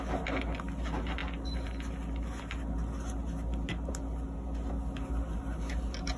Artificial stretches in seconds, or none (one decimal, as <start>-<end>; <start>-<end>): none